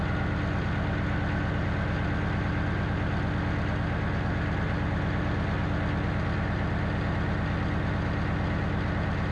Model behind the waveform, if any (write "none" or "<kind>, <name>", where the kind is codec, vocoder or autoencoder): none